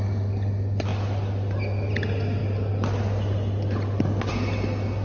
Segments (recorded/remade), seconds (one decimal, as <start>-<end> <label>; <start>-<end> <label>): 0.0-5.0 recorded